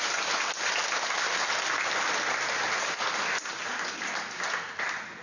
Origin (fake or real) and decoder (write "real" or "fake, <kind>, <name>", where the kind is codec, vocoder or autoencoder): real